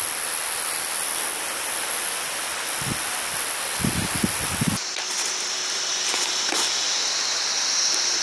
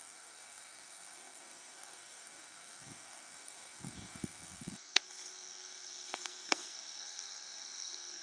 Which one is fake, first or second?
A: second